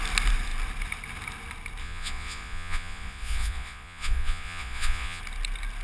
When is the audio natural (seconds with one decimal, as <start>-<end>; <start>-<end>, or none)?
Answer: 0.0-1.8; 5.2-5.8